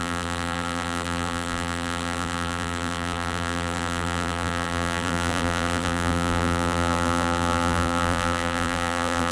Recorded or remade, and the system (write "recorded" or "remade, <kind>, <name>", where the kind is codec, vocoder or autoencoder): remade, vocoder, BigVGAN v2